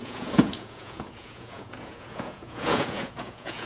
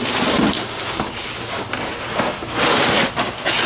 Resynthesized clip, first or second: first